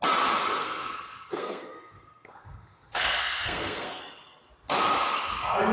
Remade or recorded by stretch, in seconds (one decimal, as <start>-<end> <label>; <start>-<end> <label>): 0.0-0.6 recorded; 0.6-4.0 remade; 4.0-5.7 recorded